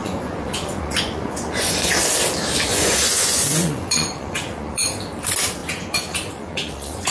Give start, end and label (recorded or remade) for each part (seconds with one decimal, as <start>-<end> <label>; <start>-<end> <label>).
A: 0.0-1.9 remade; 1.9-2.7 recorded; 2.7-4.9 remade; 4.9-5.6 recorded; 5.6-7.1 remade